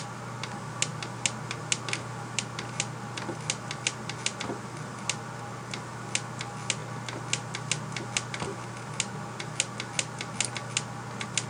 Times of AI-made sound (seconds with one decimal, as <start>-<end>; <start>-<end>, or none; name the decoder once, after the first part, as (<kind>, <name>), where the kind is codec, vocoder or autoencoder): none